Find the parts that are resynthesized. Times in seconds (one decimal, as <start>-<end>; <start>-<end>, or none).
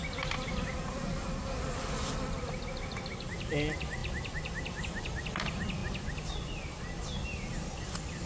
none